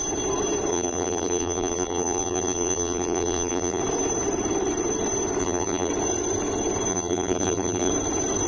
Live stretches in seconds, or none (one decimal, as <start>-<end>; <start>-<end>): 0.0-0.7; 3.8-5.4; 5.9-6.9; 7.9-8.5